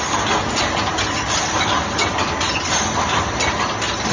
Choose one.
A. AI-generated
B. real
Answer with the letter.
B